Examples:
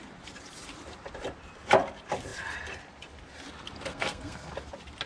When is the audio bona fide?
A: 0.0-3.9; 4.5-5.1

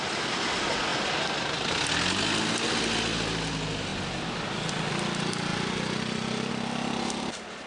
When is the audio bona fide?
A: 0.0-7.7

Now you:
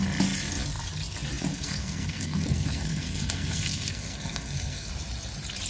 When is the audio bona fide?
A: 0.0-1.5; 4.9-5.7

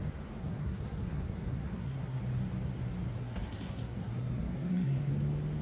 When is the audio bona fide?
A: 0.0-0.4; 2.2-3.2; 5.1-5.6